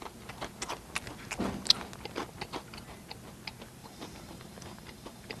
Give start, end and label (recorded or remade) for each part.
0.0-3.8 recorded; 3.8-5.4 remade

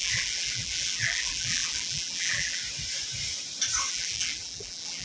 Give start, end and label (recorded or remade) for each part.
0.0-2.6 remade; 2.6-3.9 recorded; 3.9-5.0 remade

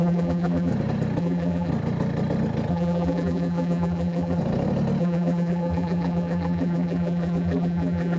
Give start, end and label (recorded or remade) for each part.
0.0-0.7 remade; 0.7-1.2 recorded; 1.2-1.7 remade; 1.7-2.7 recorded; 2.7-4.4 remade; 4.4-5.0 recorded; 5.0-8.2 remade

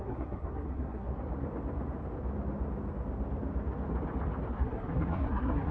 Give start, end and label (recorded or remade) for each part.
0.0-1.1 remade; 1.1-4.5 recorded; 4.5-5.7 remade